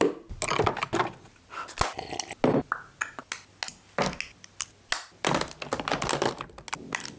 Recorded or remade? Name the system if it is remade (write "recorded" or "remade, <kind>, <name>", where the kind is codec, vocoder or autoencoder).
recorded